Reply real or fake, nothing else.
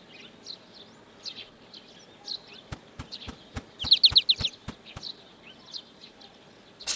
real